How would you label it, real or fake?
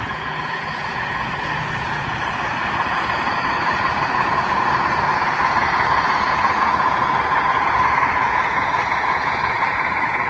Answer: fake